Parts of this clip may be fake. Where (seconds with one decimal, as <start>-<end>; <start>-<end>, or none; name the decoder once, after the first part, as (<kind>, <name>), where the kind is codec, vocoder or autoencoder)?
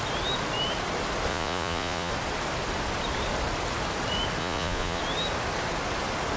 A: 1.3-2.1 (vocoder, Vocos); 4.4-5.0